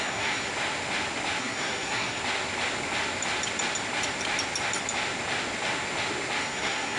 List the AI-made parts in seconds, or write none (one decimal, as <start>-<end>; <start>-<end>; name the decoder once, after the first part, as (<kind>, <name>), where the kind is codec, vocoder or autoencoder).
0.0-0.5 (codec, SNAC); 1.4-2.2; 6.4-7.0